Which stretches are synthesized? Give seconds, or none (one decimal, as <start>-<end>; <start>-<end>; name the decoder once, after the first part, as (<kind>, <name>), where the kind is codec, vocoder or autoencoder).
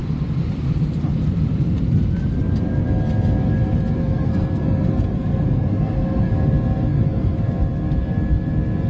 4.0-6.3 (codec, SNAC); 6.9-7.4